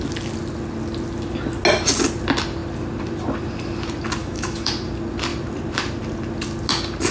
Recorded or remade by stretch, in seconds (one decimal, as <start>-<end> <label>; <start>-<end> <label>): 0.0-4.2 recorded; 4.2-4.7 remade; 4.7-7.1 recorded